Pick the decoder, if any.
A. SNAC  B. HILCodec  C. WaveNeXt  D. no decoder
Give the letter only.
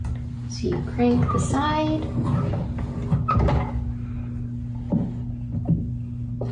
D